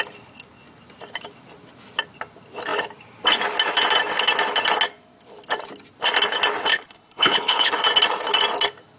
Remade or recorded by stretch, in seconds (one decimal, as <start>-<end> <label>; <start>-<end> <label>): 0.0-6.7 recorded; 6.7-7.7 remade; 7.7-9.0 recorded